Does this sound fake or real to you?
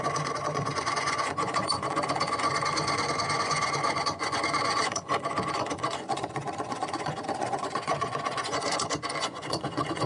fake